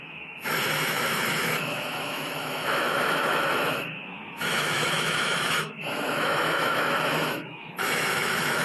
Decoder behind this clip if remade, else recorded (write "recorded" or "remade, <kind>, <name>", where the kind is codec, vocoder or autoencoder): remade, autoencoder, DAC-VAE